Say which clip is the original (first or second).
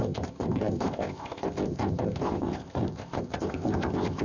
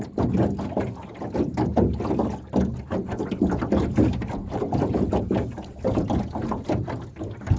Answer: second